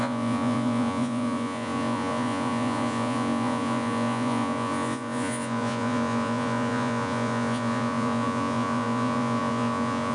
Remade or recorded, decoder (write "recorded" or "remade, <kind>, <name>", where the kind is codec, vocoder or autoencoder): remade, vocoder, Vocos